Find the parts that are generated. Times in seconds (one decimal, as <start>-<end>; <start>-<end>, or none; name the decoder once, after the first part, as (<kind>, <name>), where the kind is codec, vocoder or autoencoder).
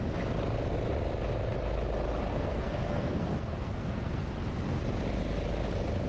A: 2.3-4.3 (codec, SNAC)